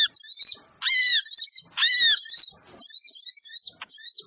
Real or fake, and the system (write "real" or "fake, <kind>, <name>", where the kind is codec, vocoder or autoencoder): real